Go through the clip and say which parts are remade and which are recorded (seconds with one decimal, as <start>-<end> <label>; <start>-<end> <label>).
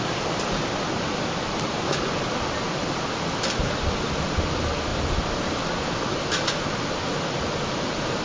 0.0-8.2 recorded